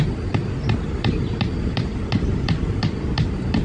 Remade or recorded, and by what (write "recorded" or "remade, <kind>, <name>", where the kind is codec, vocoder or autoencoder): recorded